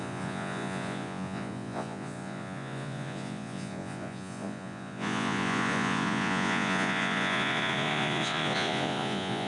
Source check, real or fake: fake